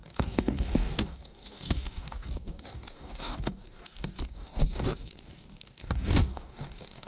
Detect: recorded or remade remade